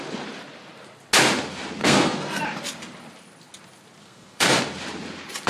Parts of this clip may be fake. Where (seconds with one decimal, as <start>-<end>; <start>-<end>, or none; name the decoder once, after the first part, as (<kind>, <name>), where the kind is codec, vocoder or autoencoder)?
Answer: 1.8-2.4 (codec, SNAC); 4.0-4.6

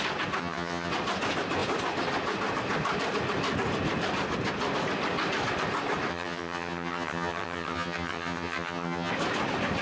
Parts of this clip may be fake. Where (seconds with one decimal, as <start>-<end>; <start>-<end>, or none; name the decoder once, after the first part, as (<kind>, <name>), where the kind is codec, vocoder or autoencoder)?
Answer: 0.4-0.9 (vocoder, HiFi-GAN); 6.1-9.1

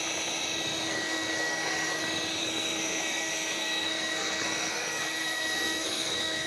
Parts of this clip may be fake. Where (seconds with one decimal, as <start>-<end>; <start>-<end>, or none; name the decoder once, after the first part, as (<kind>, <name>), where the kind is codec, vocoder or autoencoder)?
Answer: 0.9-2.0 (codec, SNAC); 2.4-6.5

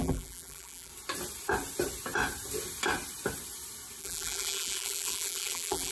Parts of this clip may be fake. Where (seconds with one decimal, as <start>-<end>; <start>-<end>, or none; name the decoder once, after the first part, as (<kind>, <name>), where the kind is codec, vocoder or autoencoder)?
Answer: 0.0-0.9 (vocoder, BigVGAN v2); 4.0-5.9

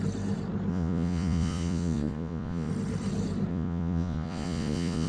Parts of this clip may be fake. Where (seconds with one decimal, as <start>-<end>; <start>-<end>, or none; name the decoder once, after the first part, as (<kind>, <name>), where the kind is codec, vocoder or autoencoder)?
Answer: 0.7-2.7 (vocoder, Vocos); 3.5-5.1

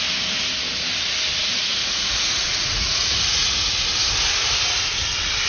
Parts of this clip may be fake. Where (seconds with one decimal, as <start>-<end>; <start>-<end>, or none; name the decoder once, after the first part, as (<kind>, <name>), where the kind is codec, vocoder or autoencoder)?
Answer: 1.4-3.8 (vocoder, Vocos)

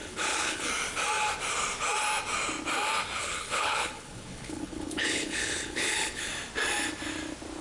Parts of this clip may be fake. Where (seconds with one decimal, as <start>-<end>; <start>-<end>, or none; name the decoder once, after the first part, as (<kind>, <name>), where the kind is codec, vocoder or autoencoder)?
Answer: 0.0-0.7 (codec, HILCodec); 3.2-6.3